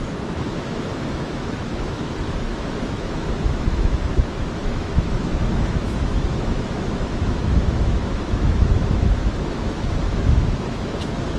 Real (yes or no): no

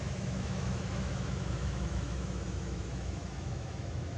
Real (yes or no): no